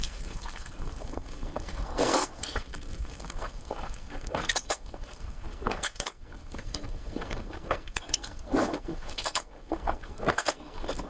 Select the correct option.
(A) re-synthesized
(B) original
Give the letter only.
A